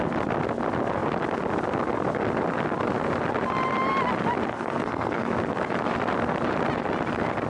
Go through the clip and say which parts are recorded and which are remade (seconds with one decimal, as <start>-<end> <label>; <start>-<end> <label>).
0.0-4.5 recorded; 4.5-5.3 remade; 5.3-7.5 recorded